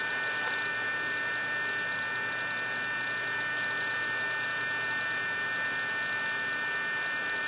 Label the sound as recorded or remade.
recorded